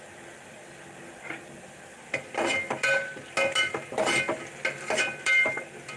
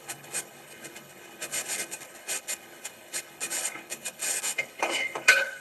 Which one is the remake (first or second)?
second